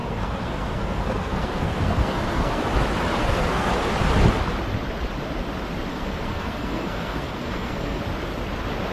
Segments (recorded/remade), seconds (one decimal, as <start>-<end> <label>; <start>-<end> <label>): 0.0-2.6 remade; 2.6-3.2 recorded; 3.2-3.7 remade; 3.7-5.9 recorded; 5.9-8.0 remade; 8.0-8.9 recorded